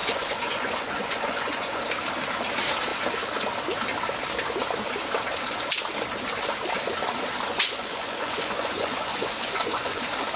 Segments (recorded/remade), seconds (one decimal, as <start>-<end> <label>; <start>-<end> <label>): 0.0-1.8 remade; 1.8-7.5 recorded; 7.5-10.0 remade; 10.0-10.4 recorded